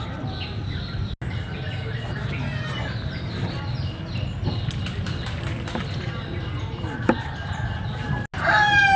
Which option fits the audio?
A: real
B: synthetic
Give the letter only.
A